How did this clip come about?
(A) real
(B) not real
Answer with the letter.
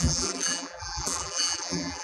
B